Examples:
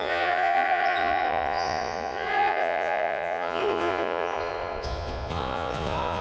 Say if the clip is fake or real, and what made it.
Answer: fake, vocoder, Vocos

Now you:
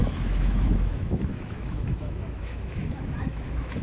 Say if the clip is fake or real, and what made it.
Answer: fake, autoencoder, DAC-VAE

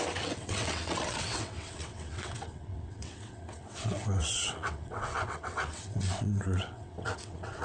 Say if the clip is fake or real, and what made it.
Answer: fake, vocoder, WaveNeXt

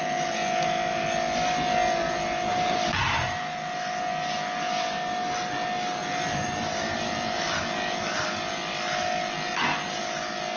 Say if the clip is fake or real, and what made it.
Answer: real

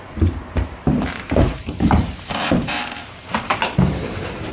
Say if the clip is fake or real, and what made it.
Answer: fake, vocoder, BigVGAN v2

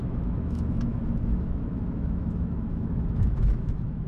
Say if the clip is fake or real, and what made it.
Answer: fake, autoencoder, DAC-VAE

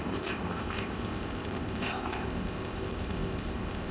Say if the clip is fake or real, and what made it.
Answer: fake, codec, ZipCodec